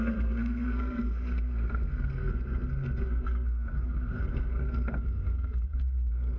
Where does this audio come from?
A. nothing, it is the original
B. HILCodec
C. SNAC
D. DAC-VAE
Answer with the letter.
C